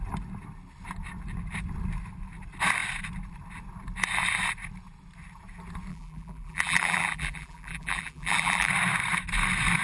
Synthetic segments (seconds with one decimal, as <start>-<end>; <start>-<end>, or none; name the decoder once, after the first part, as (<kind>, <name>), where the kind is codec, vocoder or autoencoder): 5.9-8.7 (vocoder, BigVGAN v2)